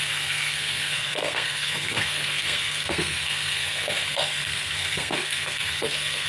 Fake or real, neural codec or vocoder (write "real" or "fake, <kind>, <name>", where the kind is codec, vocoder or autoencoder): fake, codec, SNAC